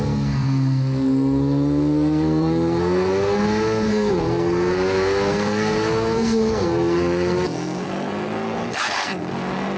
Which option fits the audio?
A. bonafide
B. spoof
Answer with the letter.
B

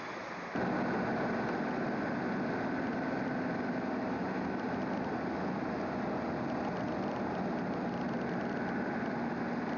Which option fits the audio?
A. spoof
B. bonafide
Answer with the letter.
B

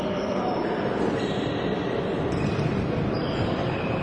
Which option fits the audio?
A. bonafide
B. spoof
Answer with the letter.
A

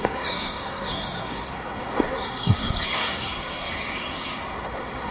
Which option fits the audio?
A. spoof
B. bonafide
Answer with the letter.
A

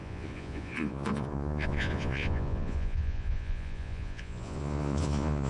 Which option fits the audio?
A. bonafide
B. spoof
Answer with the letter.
B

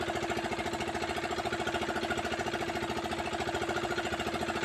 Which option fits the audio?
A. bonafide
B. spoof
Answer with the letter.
A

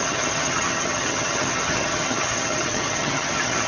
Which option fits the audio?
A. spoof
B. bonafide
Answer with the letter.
A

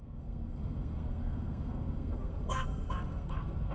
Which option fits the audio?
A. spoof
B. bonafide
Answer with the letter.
A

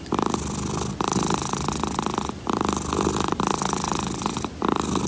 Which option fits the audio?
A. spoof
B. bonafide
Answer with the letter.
B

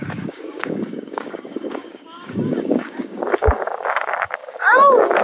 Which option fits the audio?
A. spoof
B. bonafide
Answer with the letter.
A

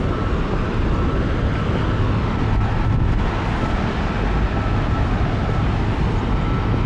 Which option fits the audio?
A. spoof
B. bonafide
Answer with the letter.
B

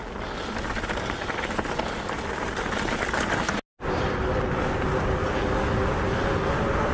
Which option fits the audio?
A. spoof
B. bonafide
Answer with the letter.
B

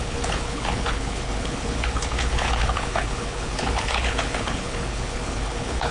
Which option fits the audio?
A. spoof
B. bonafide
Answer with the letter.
A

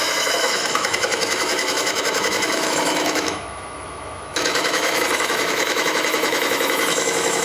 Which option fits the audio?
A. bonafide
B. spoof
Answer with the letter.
B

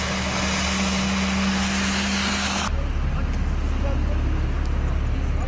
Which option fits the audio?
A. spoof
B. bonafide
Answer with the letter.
B